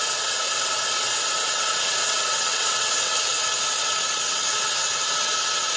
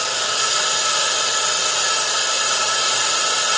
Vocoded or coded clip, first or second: first